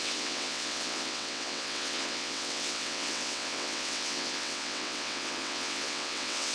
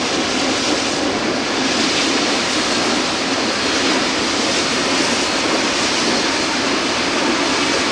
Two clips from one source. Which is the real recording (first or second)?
second